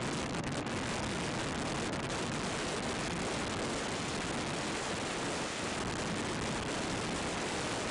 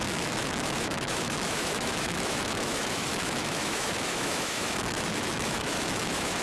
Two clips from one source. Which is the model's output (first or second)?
second